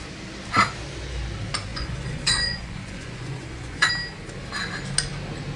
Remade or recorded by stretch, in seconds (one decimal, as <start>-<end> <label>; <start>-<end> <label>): 0.0-1.7 recorded; 1.7-3.9 remade; 3.9-5.6 recorded